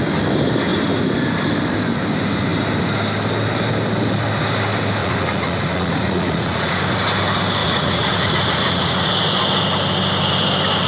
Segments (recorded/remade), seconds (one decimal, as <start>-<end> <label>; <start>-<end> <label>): 0.0-5.0 recorded; 5.0-6.8 remade; 6.8-7.6 recorded; 7.6-9.1 remade; 9.1-10.9 recorded